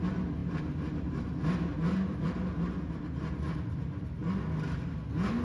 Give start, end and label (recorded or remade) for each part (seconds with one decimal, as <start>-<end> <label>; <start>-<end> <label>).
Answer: 0.0-0.4 recorded; 0.4-3.6 remade; 3.6-5.4 recorded